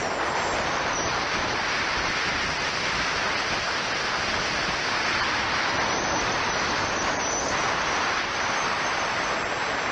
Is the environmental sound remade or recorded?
recorded